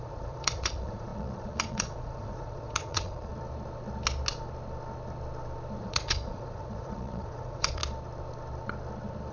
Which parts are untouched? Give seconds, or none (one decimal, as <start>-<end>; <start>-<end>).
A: 3.3-5.8; 7.8-9.3